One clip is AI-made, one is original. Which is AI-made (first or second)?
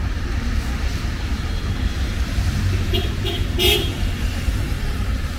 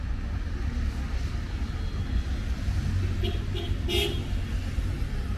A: first